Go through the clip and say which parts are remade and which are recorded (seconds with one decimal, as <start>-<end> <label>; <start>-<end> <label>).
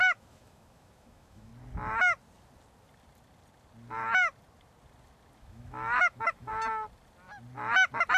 0.0-1.5 remade; 1.5-5.4 recorded; 5.4-6.5 remade; 6.5-8.2 recorded